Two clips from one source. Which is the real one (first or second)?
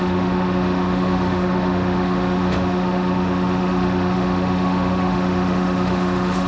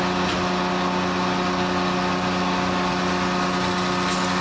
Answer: second